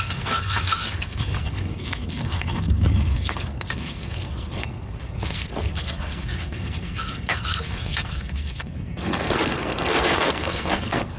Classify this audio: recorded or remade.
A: remade